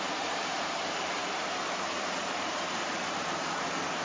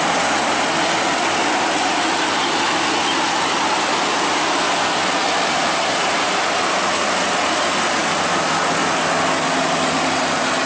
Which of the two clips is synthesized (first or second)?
first